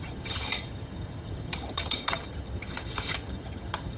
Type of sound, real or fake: fake